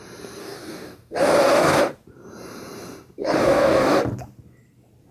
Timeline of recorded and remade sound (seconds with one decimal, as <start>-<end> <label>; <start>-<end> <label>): 0.0-0.4 recorded; 0.4-1.8 remade; 1.8-3.2 recorded; 3.2-4.0 remade; 4.0-5.1 recorded